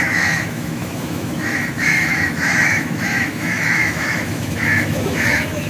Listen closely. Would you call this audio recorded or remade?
remade